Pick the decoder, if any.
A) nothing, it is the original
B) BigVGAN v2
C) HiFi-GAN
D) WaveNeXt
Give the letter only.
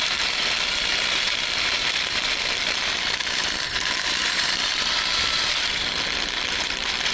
B